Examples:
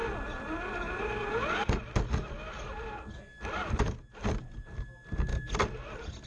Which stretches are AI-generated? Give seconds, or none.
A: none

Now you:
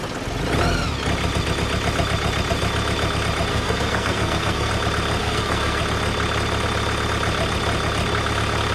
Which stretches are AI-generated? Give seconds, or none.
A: 3.5-4.7 (codec, SNAC); 5.2-5.8

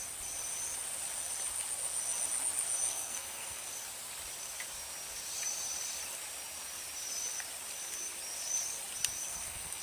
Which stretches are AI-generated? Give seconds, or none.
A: 2.9-3.7 (codec, SNAC); 9.2-9.8

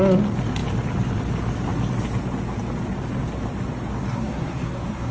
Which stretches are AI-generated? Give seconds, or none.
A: 4.1-5.1 (codec, SNAC)

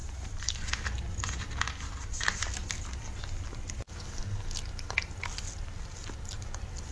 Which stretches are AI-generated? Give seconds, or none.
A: none